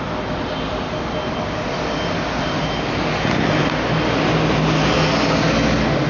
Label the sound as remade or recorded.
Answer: recorded